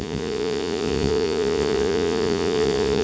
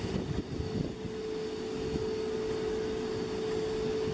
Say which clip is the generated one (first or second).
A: first